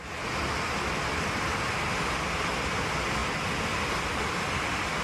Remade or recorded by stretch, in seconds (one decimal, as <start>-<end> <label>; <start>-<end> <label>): 0.0-5.0 recorded